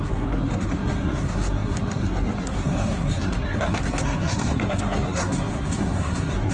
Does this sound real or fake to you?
fake